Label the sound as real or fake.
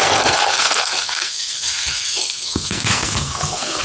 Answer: fake